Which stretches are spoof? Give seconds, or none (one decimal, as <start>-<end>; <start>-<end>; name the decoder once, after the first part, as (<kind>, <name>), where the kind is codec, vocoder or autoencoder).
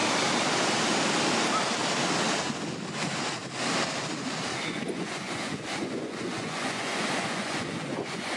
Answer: 4.5-8.4 (vocoder, Vocos)